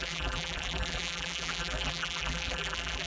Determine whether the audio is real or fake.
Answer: fake